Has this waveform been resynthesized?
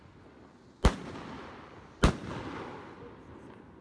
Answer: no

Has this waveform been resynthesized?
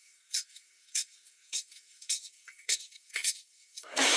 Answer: yes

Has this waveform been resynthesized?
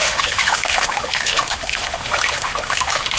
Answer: yes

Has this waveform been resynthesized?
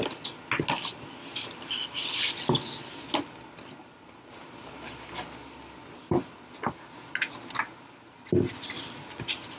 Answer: no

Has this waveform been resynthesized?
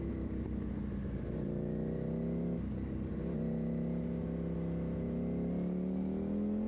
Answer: no